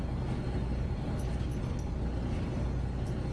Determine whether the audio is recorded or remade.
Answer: recorded